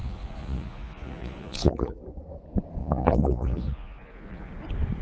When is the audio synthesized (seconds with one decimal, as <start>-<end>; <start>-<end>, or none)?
0.0-2.0; 2.8-4.5